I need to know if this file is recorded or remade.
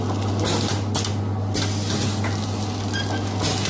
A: recorded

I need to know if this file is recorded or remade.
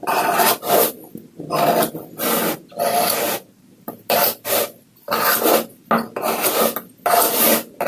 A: recorded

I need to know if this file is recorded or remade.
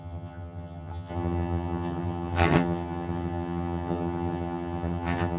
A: remade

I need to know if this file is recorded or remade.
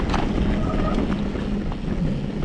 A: recorded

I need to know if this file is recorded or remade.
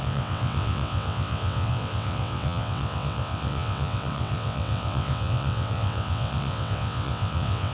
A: remade